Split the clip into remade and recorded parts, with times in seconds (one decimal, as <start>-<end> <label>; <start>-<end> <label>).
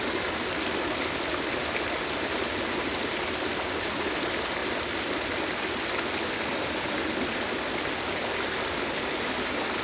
0.0-9.8 recorded